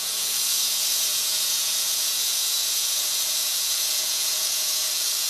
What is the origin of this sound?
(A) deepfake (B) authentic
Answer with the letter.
A